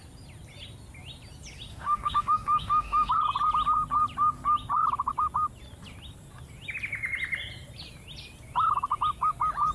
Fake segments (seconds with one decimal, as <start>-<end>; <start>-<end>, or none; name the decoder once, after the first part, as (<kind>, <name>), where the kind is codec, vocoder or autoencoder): 1.7-3.1 (autoencoder, DAC-VAE)